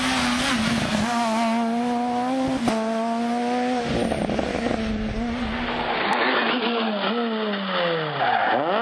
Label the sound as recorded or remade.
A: recorded